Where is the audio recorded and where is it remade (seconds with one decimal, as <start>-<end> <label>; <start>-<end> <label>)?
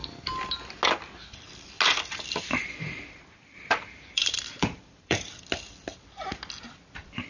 0.0-2.6 recorded; 2.6-5.4 remade; 5.4-7.3 recorded